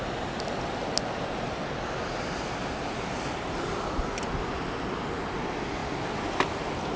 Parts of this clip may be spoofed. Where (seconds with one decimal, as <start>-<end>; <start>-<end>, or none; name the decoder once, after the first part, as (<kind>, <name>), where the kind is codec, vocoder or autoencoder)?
none